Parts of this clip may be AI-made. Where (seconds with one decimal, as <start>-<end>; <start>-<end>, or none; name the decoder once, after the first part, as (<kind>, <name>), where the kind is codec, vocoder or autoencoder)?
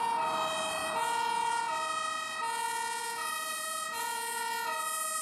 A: 0.8-1.6 (vocoder, Vocos); 3.0-4.4